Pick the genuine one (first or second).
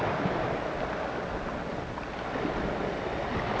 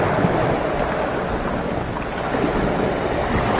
second